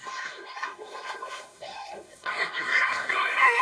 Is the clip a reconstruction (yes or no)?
yes